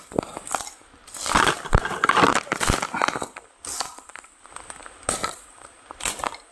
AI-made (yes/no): no